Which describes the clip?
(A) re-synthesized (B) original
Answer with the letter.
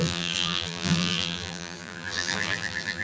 A